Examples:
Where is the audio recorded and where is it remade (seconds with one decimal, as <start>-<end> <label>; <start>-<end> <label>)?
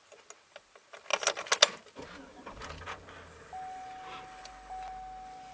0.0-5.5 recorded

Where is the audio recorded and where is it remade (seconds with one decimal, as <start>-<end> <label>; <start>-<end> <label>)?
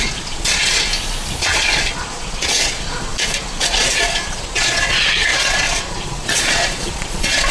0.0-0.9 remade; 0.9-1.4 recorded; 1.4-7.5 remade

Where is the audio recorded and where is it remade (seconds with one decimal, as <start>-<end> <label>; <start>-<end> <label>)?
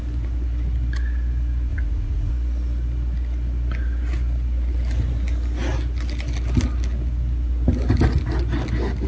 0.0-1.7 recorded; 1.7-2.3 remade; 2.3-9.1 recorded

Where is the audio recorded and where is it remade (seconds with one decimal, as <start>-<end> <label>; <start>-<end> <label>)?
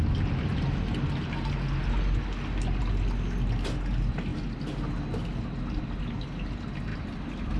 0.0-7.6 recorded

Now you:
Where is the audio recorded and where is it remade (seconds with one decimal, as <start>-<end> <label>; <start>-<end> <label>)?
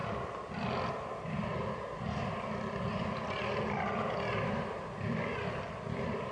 0.0-6.3 recorded